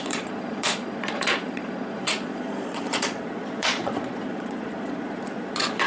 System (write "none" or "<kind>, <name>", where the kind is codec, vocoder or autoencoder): vocoder, Vocos